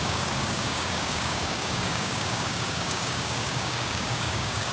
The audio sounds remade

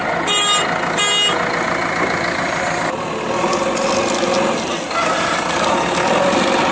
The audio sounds recorded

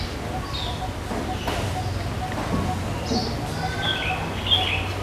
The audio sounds recorded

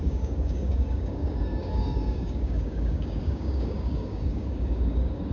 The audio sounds remade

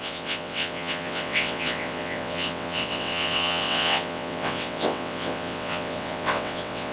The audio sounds remade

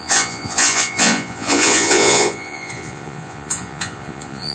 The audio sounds remade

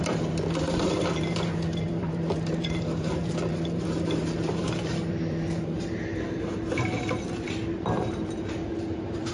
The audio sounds remade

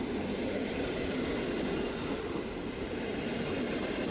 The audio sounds recorded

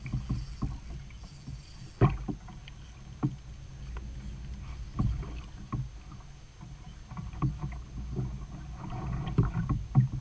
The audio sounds recorded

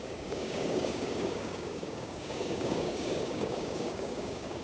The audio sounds remade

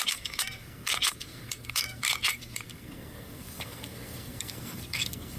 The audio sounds remade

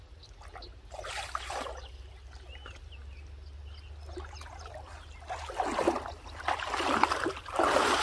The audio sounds recorded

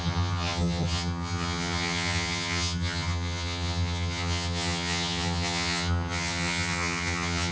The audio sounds remade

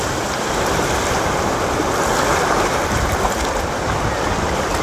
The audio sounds remade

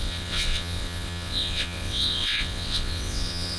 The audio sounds remade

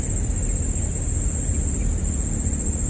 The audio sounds recorded